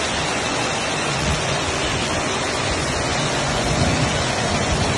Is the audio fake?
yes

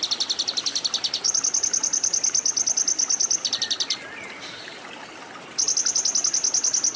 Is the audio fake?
no